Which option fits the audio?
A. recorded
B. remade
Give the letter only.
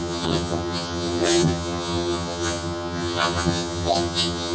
B